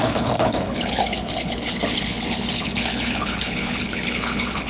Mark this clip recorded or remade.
remade